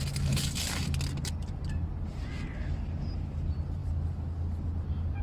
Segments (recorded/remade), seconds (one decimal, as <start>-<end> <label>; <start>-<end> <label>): 0.0-3.8 recorded; 3.8-5.2 remade